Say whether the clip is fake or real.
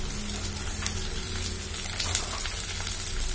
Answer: real